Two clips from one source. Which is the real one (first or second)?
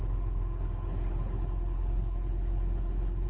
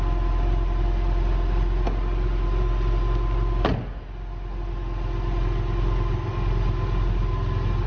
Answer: second